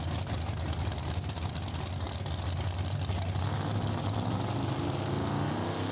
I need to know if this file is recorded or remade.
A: recorded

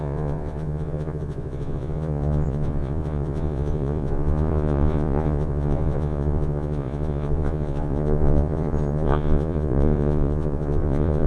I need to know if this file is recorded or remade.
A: remade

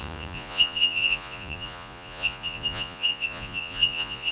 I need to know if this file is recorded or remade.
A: remade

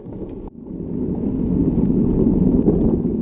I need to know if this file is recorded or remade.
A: recorded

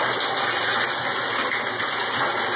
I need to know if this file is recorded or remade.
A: recorded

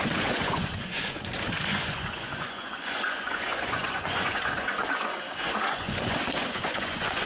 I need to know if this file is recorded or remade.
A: remade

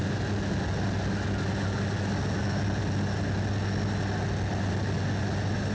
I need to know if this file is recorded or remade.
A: recorded